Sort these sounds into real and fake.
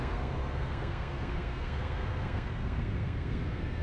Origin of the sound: fake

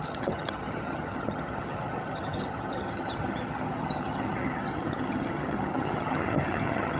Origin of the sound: fake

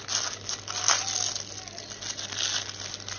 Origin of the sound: real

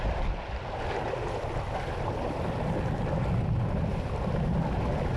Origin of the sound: real